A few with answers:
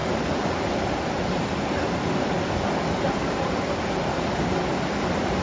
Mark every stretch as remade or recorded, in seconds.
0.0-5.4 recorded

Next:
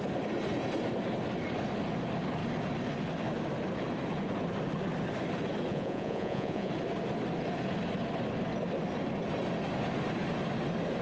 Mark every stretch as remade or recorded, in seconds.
0.0-5.7 recorded; 5.7-6.7 remade; 6.7-11.0 recorded

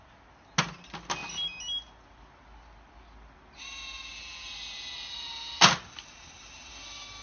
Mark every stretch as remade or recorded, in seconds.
0.0-7.2 recorded